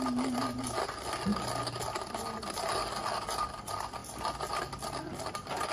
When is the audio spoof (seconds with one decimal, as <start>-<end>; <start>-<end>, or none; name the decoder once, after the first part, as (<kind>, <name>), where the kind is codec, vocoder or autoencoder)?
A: none